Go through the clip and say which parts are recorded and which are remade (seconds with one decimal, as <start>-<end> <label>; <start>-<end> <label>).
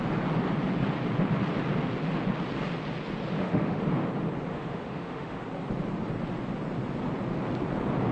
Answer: 0.0-3.3 recorded; 3.3-3.8 remade; 3.8-4.5 recorded; 4.5-5.4 remade; 5.4-8.1 recorded